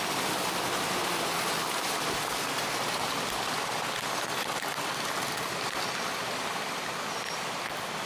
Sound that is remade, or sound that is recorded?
recorded